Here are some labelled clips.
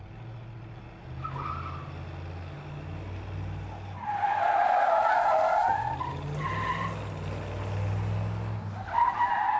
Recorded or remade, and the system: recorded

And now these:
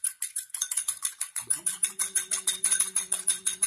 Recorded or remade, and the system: remade, vocoder, Vocos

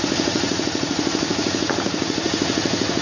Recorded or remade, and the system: remade, vocoder, Vocos